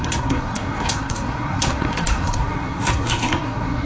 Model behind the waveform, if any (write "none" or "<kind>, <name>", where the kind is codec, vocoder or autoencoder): codec, SNAC